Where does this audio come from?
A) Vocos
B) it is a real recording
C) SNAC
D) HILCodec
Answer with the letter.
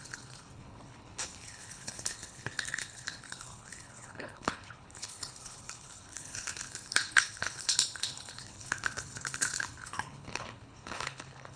D